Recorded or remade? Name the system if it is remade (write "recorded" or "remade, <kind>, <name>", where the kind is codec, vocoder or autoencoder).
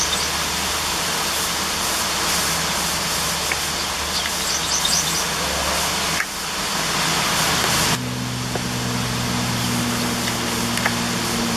recorded